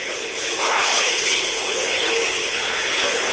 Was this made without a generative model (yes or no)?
no